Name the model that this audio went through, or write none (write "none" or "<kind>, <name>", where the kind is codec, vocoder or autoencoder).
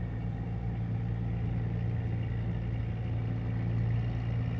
none